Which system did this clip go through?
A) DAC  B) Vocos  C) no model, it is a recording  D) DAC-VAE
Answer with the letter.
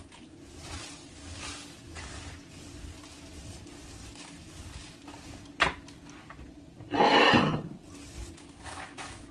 C